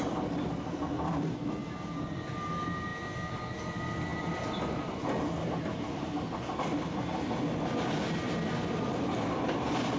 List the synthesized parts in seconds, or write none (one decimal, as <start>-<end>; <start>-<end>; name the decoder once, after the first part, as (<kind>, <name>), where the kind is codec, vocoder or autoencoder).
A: none